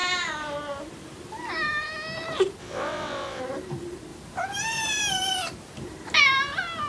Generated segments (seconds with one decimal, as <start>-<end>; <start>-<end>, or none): 2.6-3.4